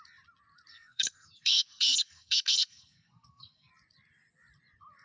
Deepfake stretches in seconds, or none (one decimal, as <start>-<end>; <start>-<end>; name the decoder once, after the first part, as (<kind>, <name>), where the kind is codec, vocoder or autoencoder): 0.7-3.7 (codec, SNAC)

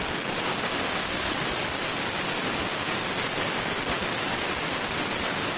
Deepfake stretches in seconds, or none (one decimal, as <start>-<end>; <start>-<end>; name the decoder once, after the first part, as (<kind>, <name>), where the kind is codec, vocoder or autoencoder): 0.8-1.3 (codec, SNAC)

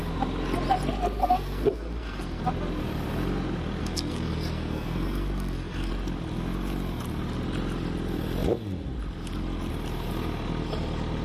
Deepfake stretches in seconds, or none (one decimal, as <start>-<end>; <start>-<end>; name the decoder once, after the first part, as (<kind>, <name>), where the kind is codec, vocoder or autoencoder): 1.2-2.4 (codec, SNAC); 3.8-5.9

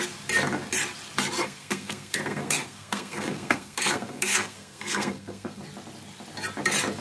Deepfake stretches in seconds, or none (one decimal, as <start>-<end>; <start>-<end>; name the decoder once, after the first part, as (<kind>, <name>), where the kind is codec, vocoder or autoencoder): 1.4-5.6 (codec, SNAC)

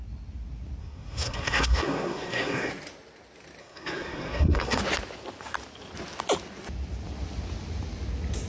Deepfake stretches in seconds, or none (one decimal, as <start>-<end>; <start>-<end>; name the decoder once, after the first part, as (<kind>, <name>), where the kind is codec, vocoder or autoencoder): 0.8-2.7 (codec, SNAC); 3.6-4.8

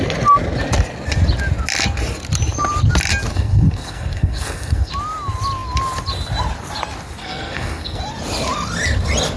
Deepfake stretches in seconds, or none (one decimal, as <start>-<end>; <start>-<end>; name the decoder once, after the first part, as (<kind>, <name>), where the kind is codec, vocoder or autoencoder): 3.3-4.9 (codec, SNAC); 7.2-8.0

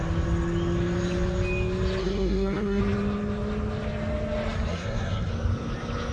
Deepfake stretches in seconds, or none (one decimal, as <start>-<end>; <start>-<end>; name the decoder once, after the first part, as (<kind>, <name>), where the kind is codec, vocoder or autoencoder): 2.0-2.8 (codec, SNAC); 4.7-5.3

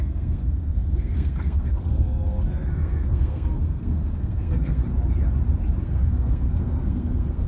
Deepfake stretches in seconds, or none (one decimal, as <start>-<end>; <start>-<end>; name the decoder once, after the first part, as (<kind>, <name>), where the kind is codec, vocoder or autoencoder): 0.0-4.8 (codec, SNAC); 5.8-7.5